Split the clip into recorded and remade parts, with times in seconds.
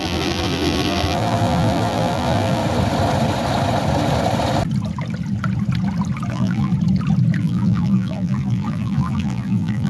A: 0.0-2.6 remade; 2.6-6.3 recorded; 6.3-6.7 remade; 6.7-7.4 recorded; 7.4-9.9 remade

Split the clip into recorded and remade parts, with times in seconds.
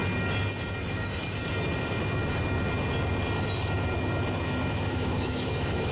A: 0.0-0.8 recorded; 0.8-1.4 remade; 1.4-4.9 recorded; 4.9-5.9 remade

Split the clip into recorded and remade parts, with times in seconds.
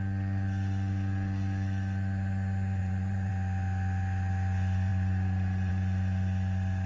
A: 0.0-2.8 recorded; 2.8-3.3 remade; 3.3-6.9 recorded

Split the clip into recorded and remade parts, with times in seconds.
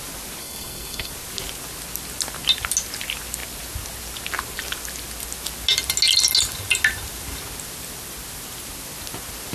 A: 0.0-0.4 recorded; 0.4-1.1 remade; 1.1-9.5 recorded